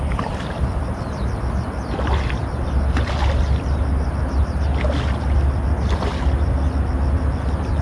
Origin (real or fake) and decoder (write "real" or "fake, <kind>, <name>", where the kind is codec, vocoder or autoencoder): real